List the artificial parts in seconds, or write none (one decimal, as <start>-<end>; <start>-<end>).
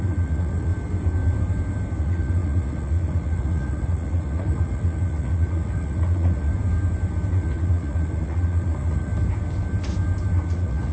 0.0-0.7; 2.0-6.5; 7.3-9.1; 10.5-10.9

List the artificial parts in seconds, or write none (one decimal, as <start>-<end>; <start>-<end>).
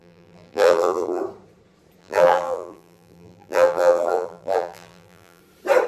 0.0-1.2; 2.0-5.4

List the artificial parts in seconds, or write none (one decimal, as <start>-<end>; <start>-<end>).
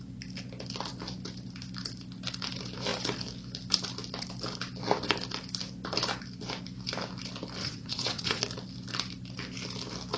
7.6-8.4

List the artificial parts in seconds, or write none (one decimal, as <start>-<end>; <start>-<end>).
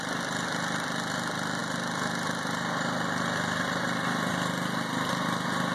none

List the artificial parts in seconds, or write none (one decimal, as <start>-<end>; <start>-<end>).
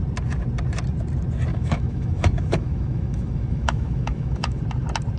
1.5-4.6